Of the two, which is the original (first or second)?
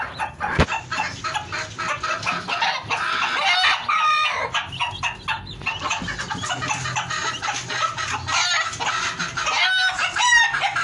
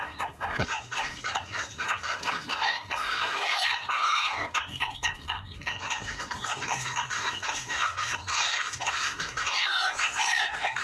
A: first